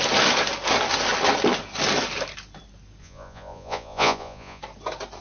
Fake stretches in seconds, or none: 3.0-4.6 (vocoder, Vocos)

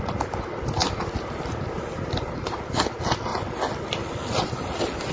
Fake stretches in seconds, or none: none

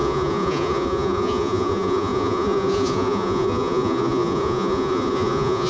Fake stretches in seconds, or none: 0.0-5.7 (vocoder, Vocos)

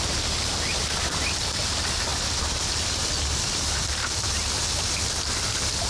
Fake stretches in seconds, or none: none

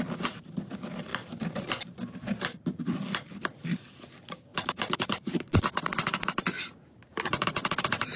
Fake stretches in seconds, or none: 1.1-2.8 (vocoder, BigVGAN v2); 4.5-5.5; 7.1-8.2

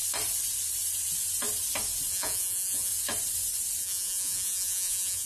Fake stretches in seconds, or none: 2.1-2.9 (vocoder, Vocos); 3.8-5.3